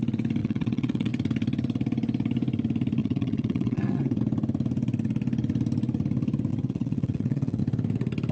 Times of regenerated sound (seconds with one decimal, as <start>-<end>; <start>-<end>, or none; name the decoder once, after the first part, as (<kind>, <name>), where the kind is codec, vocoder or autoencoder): 0.4-1.1 (vocoder, WaveNeXt); 3.0-4.2; 6.5-7.6